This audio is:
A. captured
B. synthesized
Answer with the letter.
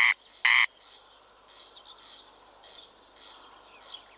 A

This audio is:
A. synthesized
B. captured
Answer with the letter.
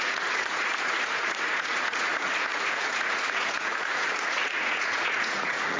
A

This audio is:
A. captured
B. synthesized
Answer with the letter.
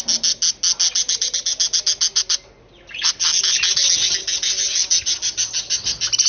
A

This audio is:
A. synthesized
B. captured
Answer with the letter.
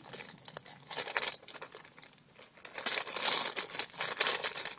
B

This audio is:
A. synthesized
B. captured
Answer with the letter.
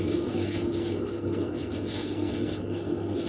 A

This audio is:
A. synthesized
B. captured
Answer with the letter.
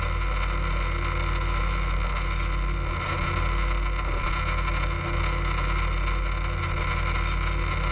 B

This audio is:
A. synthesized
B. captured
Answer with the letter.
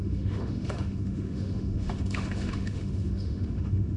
A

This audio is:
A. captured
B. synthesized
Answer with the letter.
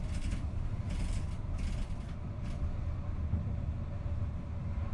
A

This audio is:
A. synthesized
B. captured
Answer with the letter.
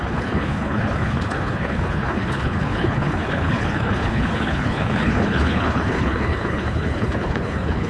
A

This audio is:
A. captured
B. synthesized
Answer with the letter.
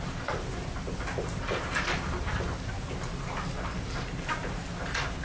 A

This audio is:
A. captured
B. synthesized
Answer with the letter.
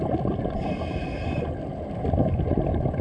A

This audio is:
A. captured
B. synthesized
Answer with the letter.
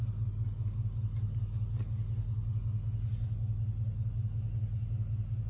A